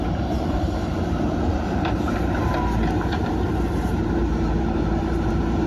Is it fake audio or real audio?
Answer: fake